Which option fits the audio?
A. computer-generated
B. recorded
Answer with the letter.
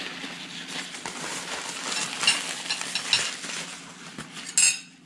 B